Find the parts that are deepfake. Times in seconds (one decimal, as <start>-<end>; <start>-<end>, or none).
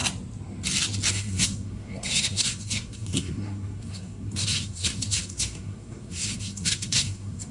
1.1-7.5